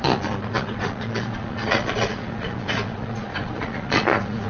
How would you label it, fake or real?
fake